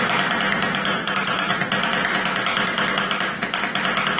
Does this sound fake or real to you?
real